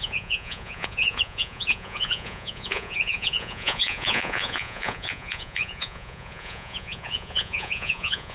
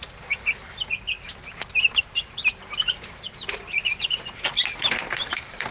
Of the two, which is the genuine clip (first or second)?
second